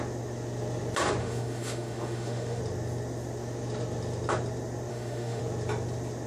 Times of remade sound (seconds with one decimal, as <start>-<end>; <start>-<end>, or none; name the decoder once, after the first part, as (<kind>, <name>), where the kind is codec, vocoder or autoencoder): 1.2-2.6 (autoencoder, DAC-VAE); 4.9-5.4

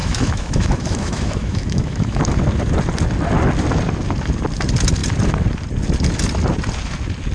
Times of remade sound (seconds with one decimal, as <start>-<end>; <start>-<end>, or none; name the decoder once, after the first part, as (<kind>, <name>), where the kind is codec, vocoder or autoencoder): 0.0-2.2 (autoencoder, DAC-VAE)